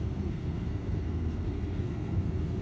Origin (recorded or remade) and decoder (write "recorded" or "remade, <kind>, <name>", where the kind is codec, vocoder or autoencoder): remade, codec, SNAC